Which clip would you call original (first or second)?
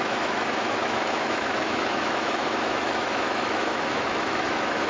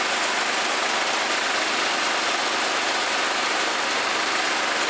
second